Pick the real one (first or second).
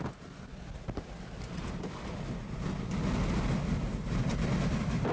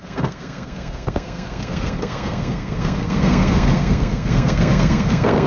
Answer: first